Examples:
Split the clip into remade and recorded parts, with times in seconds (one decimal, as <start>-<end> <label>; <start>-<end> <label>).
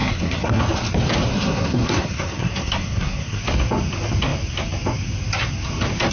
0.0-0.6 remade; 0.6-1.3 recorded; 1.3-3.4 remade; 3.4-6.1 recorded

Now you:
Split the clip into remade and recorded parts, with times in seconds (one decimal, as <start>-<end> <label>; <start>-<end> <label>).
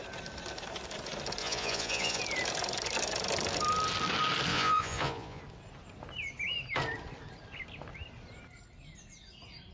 0.0-1.4 recorded; 1.4-2.2 remade; 2.2-4.5 recorded; 4.5-5.4 remade; 5.4-9.7 recorded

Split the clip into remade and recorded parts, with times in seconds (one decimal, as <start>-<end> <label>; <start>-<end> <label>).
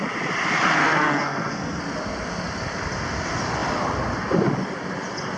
0.0-0.8 recorded; 0.8-1.8 remade; 1.8-5.4 recorded